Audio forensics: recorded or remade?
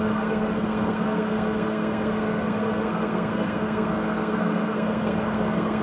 remade